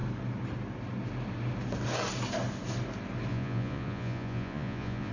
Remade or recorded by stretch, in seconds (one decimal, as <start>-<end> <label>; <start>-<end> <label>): 0.0-3.3 recorded; 3.3-5.1 remade